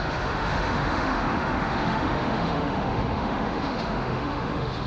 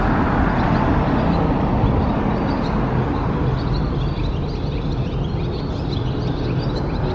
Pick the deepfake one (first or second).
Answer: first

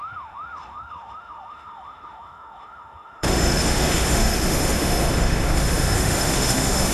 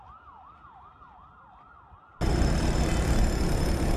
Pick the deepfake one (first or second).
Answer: first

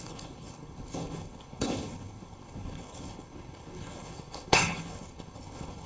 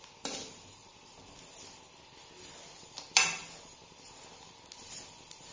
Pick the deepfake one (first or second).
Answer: first